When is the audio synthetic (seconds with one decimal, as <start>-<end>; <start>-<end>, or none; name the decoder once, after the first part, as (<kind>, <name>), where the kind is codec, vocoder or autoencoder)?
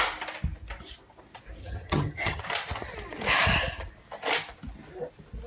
1.6-2.4 (vocoder, HiFi-GAN)